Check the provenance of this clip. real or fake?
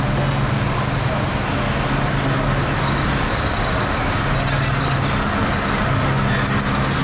real